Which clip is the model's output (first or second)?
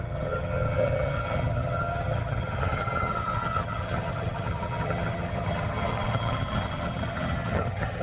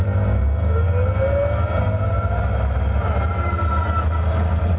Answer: first